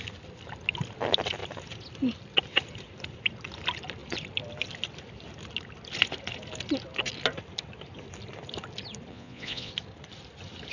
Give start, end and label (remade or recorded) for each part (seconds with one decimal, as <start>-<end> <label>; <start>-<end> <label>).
0.0-9.1 recorded; 9.1-9.7 remade; 9.7-10.7 recorded